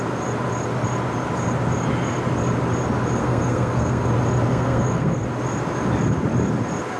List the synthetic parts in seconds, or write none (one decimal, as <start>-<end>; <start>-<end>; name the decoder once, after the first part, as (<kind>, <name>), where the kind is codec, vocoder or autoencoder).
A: 3.2-4.1 (codec, SNAC); 4.5-5.2